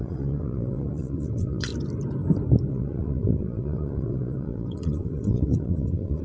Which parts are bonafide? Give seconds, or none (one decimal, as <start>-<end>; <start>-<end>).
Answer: 1.7-2.7